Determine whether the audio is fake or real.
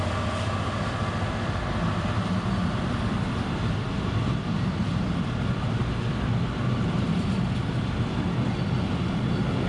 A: real